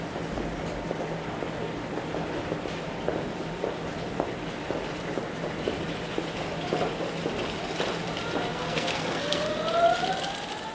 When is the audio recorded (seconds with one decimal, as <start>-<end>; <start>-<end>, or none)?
0.0-8.5; 9.5-10.7

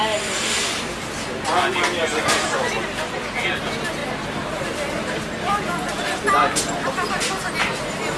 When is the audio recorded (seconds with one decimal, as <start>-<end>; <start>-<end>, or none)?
0.0-8.2